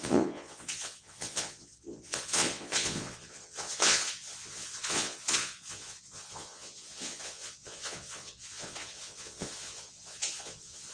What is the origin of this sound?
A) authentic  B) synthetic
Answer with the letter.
B